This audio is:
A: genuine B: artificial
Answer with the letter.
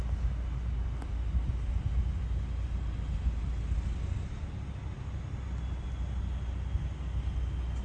A